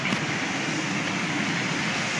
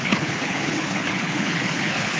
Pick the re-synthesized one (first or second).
second